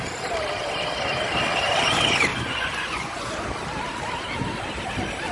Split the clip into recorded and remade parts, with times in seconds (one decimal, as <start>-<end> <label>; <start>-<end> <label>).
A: 0.0-2.3 recorded; 2.3-3.3 remade; 3.3-5.3 recorded